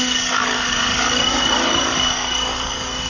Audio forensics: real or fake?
fake